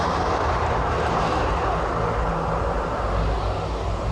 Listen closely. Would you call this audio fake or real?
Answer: real